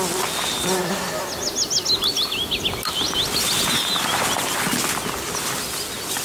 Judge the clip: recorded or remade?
recorded